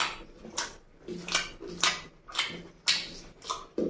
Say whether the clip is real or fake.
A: real